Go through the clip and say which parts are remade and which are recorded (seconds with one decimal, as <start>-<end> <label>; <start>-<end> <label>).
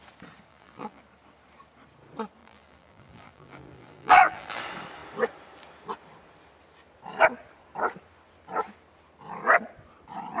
0.0-0.5 recorded; 0.5-1.0 remade; 1.0-2.4 recorded; 2.4-4.6 remade; 4.6-10.4 recorded